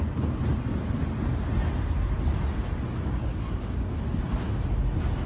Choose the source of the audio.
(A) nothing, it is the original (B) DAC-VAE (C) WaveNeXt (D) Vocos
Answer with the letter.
A